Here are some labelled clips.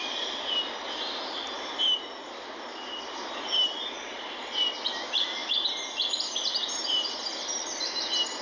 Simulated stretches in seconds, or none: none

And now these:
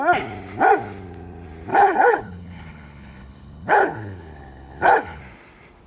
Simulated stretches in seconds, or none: 1.7-5.2 (codec, HILCodec)

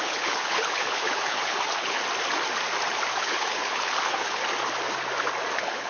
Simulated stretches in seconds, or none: 0.0-2.0 (codec, HILCodec); 3.2-4.4; 5.5-5.9